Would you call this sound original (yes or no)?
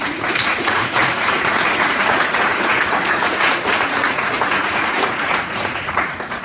no